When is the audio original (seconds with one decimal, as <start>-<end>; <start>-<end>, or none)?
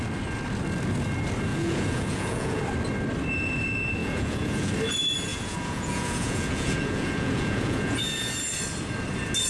0.0-1.5; 2.6-4.0; 4.7-5.3; 8.3-9.5